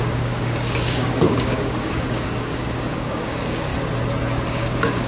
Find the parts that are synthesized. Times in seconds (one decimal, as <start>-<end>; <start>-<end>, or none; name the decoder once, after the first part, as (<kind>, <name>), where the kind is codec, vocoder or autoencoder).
0.0-3.7 (codec, DAC); 4.5-5.1